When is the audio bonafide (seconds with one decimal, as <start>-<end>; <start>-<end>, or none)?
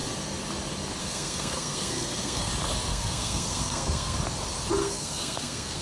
0.0-1.0; 2.5-2.9; 4.2-4.8